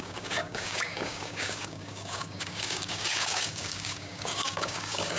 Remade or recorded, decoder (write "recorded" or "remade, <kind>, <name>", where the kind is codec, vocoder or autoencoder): remade, codec, DAC